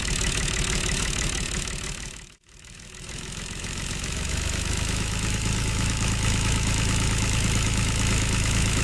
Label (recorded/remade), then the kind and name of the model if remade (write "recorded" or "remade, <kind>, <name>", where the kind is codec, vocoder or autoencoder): remade, autoencoder, DAC-VAE